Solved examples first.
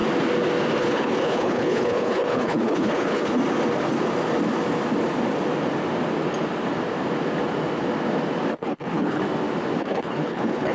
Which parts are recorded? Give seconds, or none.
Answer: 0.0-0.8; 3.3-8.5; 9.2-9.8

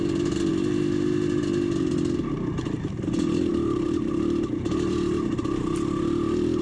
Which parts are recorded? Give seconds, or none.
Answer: 0.0-6.6